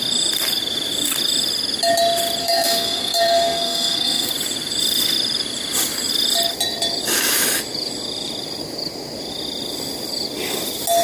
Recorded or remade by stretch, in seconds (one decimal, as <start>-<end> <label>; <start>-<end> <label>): 0.0-2.4 recorded; 2.4-4.3 remade; 4.3-11.0 recorded